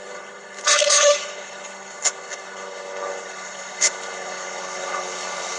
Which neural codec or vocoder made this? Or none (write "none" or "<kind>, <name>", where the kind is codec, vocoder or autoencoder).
codec, HILCodec